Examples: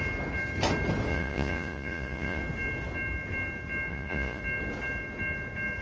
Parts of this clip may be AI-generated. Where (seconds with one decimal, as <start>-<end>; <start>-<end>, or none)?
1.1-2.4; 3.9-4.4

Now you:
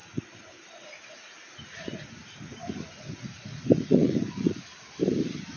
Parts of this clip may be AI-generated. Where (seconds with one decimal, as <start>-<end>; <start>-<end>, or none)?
0.0-2.9; 3.3-5.0

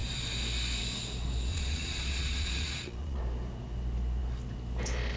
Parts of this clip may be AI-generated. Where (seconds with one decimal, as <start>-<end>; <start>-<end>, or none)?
1.5-3.2

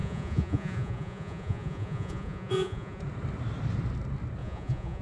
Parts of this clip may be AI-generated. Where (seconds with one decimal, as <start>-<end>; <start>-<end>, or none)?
0.0-3.0; 4.4-5.0

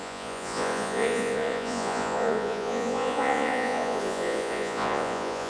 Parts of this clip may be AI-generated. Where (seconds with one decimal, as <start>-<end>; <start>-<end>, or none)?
0.0-5.5

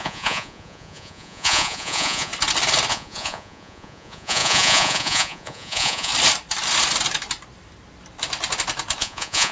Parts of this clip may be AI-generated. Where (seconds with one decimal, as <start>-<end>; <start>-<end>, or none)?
0.0-2.3; 2.9-6.1; 9.0-9.5

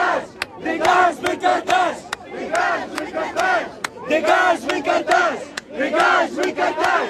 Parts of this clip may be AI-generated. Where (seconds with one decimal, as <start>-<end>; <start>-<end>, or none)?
1.5-2.1; 2.9-4.7; 5.2-5.8